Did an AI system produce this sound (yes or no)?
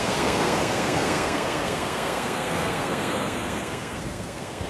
yes